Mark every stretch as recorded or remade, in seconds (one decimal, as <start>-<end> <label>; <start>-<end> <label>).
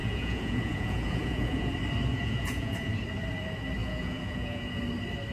0.0-1.7 remade; 1.7-2.1 recorded; 2.1-2.9 remade; 2.9-3.8 recorded; 3.8-4.8 remade; 4.8-5.3 recorded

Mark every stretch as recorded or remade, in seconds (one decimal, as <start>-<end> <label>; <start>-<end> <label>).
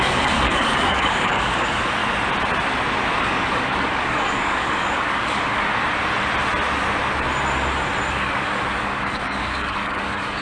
0.0-2.0 remade; 2.0-3.2 recorded; 3.2-5.7 remade; 5.7-8.1 recorded; 8.1-10.4 remade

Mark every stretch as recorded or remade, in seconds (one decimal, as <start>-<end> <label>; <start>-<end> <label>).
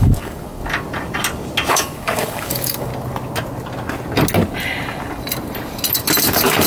0.0-0.6 remade; 0.6-1.7 recorded; 1.7-2.9 remade; 2.9-6.2 recorded; 6.2-6.7 remade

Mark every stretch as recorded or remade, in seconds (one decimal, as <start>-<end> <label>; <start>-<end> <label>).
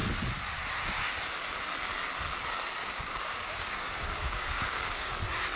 0.0-2.8 recorded; 2.8-5.1 remade; 5.1-5.6 recorded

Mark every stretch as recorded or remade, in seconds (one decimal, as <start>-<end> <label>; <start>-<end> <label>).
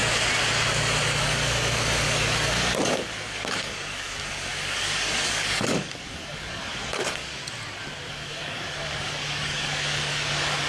0.0-1.2 recorded; 1.2-7.4 remade; 7.4-8.1 recorded; 8.1-10.7 remade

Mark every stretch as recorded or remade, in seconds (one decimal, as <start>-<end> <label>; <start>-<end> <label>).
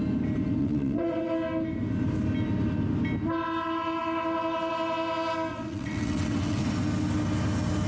0.0-0.6 recorded; 0.6-1.3 remade; 1.3-5.5 recorded; 5.5-6.6 remade; 6.6-7.9 recorded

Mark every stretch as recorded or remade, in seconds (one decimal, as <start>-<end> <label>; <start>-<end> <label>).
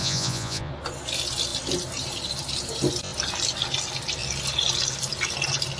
0.0-0.7 remade; 0.7-5.8 recorded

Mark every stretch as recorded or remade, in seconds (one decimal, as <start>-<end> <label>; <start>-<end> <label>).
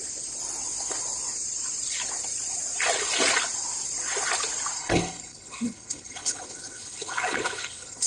0.0-4.8 recorded; 4.8-8.1 remade